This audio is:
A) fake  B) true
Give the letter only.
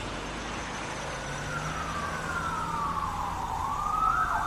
B